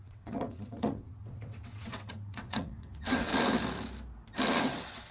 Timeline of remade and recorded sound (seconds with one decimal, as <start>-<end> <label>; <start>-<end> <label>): 0.0-3.3 remade; 3.3-4.6 recorded; 4.6-5.1 remade